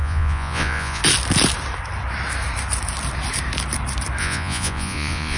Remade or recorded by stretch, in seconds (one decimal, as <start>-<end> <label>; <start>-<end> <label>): 0.0-1.0 remade; 1.0-4.2 recorded; 4.2-5.4 remade